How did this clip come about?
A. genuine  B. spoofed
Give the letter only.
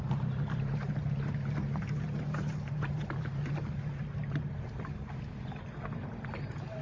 A